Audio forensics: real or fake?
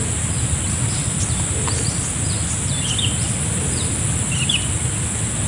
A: real